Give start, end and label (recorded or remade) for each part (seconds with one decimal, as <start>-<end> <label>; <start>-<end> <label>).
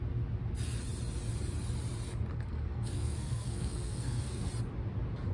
0.0-2.3 recorded; 2.3-4.5 remade; 4.5-5.3 recorded